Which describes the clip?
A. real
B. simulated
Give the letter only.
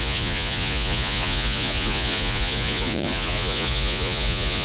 B